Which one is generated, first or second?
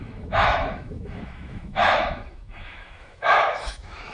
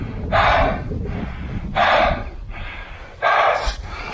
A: first